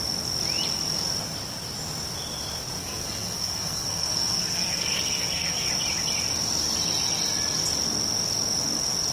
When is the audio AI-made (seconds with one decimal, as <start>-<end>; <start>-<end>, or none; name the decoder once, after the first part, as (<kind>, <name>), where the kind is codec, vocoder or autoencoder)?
2.8-5.7 (codec, SNAC)